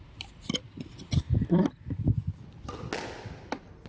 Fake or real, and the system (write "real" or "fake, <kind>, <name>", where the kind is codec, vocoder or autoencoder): real